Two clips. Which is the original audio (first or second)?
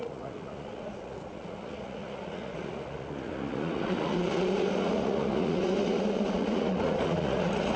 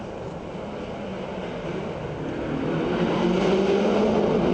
second